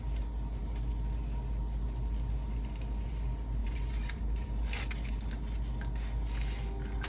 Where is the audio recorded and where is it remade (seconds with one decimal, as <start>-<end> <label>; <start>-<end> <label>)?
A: 0.0-3.6 recorded; 3.6-4.6 remade; 4.6-7.1 recorded